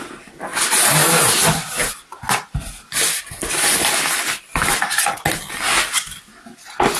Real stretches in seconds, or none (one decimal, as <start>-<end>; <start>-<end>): 0.0-7.0